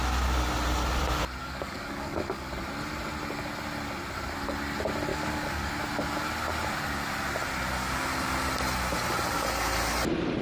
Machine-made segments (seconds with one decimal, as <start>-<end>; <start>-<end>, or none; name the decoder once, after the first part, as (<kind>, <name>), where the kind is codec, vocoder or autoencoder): 1.4-2.5 (codec, DAC); 5.1-5.7